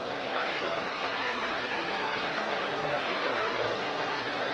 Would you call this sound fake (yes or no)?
yes